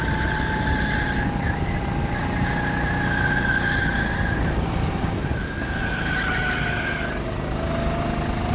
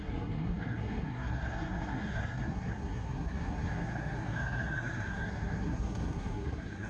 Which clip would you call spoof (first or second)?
second